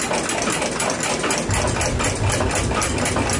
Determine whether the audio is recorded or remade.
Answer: recorded